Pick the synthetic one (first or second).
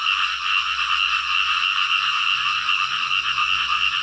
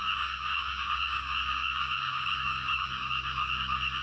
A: second